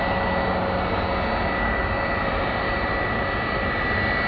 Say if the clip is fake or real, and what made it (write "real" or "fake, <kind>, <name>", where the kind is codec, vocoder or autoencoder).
real